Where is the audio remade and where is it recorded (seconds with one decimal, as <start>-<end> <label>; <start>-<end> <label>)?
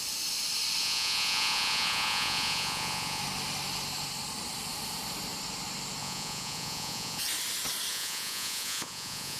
0.0-0.8 recorded; 0.8-3.2 remade; 3.2-6.0 recorded; 6.0-7.2 remade; 7.2-7.9 recorded; 7.9-9.4 remade